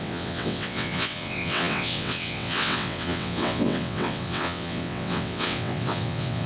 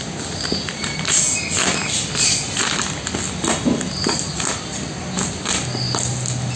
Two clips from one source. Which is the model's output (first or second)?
first